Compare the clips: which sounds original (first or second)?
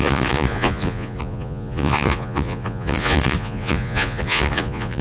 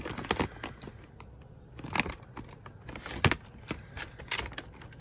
second